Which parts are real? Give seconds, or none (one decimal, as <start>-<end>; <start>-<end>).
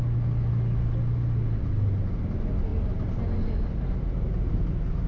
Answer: 0.0-5.1